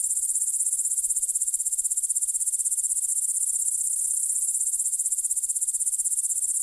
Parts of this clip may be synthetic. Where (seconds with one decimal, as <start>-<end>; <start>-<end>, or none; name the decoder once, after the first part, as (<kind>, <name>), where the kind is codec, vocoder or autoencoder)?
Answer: none